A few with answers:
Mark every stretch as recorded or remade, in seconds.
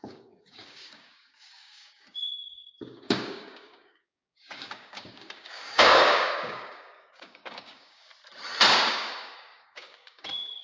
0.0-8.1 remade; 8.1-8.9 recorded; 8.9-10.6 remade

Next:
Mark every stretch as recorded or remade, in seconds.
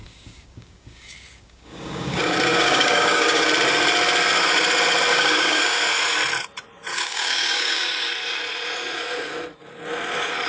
0.0-3.5 remade; 3.5-5.1 recorded; 5.1-5.8 remade; 5.8-6.9 recorded; 6.9-8.1 remade; 8.1-10.5 recorded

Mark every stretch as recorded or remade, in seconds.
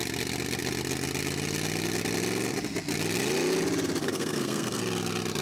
0.0-4.0 recorded; 4.0-4.8 remade; 4.8-5.4 recorded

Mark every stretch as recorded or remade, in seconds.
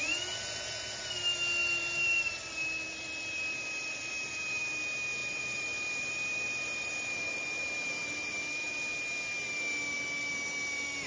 0.0-1.6 recorded; 1.6-4.1 remade; 4.1-5.2 recorded; 5.2-8.8 remade; 8.8-11.1 recorded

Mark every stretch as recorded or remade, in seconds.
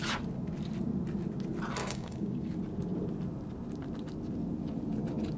0.0-1.8 recorded; 1.8-2.5 remade; 2.5-5.4 recorded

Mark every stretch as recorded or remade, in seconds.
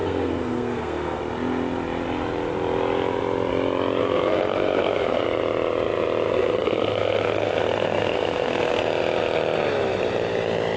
0.0-1.2 remade; 1.2-4.0 recorded; 4.0-5.2 remade; 5.2-6.3 recorded; 6.3-8.8 remade; 8.8-10.8 recorded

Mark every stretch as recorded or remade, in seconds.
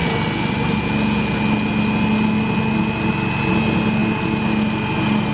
0.0-5.3 recorded